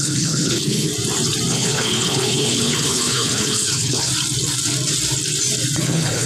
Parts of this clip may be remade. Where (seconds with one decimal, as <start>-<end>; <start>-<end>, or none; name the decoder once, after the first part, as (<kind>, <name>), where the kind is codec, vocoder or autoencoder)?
0.0-0.9 (codec, HILCodec); 1.5-4.1; 5.8-6.3